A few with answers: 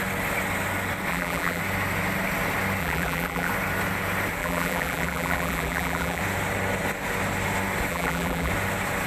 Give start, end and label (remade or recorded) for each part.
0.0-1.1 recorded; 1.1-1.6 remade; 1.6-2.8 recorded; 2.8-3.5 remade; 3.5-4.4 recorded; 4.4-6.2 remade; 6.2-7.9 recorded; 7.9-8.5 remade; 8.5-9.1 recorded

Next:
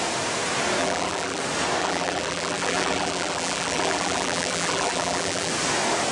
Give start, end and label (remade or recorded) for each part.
0.0-0.8 recorded; 0.8-1.4 remade; 1.4-1.8 recorded; 1.8-5.5 remade; 5.5-6.1 recorded

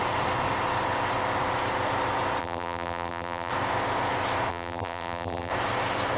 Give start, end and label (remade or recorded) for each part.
0.0-2.4 recorded; 2.4-3.5 remade; 3.5-4.5 recorded; 4.5-5.5 remade; 5.5-6.2 recorded

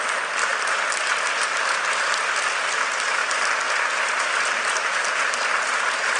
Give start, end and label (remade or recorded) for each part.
0.0-0.5 recorded; 0.5-1.1 remade; 1.1-6.2 recorded

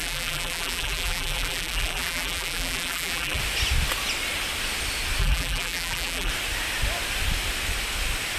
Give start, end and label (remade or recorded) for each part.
0.0-3.4 remade; 3.4-5.2 recorded; 5.2-6.3 remade; 6.3-8.4 recorded

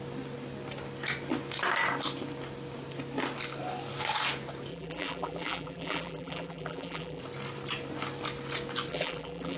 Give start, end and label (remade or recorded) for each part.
0.0-4.7 recorded; 4.7-7.2 remade; 7.2-8.9 recorded; 8.9-9.6 remade